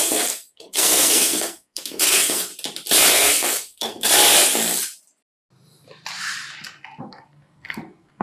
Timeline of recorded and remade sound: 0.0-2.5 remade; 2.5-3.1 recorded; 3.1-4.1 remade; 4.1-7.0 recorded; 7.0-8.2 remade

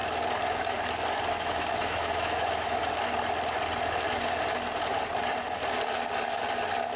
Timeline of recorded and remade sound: 0.0-1.3 recorded; 1.3-2.8 remade; 2.8-7.0 recorded

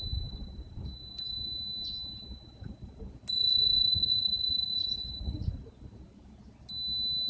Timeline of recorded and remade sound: 0.0-3.9 recorded; 3.9-5.5 remade; 5.5-7.3 recorded

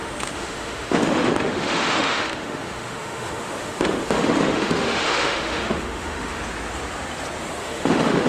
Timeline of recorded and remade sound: 0.0-6.4 remade; 6.4-7.6 recorded; 7.6-8.3 remade

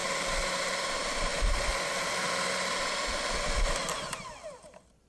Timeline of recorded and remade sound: 0.0-5.1 recorded

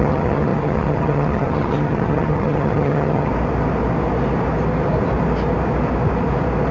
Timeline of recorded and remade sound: 0.0-3.3 remade; 3.3-6.7 recorded